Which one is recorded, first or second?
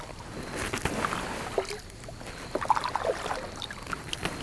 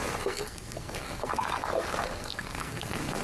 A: first